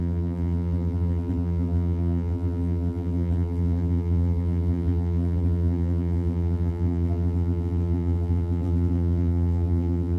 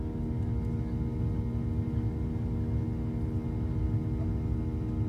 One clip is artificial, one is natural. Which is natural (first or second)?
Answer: second